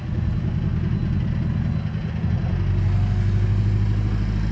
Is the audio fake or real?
real